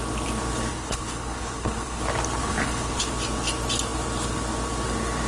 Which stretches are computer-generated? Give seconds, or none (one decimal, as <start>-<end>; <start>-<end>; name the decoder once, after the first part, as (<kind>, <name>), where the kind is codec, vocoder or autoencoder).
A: 0.7-2.0 (codec, HILCodec); 2.4-3.1